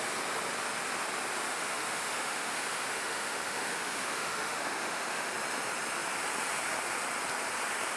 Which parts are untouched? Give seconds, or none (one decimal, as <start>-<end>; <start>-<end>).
0.0-1.5; 5.3-8.0